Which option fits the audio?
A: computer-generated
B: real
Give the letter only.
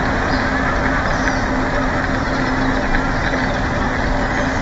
B